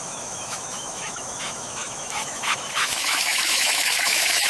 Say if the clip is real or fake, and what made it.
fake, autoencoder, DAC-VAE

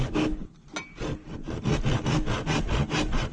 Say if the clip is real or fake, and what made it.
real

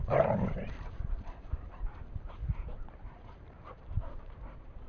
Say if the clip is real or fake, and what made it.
fake, vocoder, BigVGAN v2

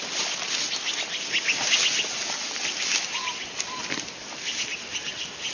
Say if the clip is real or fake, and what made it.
real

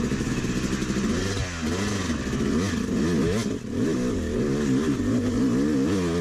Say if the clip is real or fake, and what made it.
real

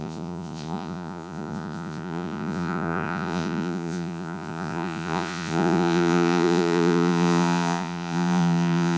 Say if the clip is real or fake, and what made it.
fake, vocoder, Vocos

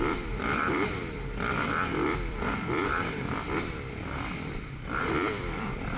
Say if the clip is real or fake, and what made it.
fake, vocoder, BigVGAN v2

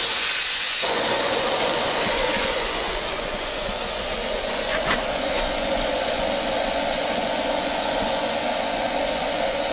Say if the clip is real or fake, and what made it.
fake, vocoder, Vocos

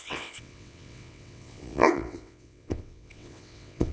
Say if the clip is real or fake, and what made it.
fake, vocoder, WaveNeXt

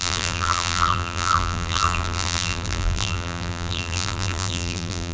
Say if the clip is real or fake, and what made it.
fake, vocoder, BigVGAN v2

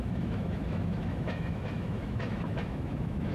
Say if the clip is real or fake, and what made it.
fake, autoencoder, DAC-VAE